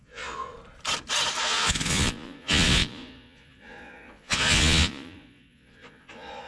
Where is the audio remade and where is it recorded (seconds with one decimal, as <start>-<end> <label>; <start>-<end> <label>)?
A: 0.0-0.5 remade; 0.5-1.4 recorded; 1.4-6.5 remade